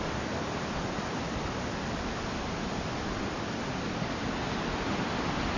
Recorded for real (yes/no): yes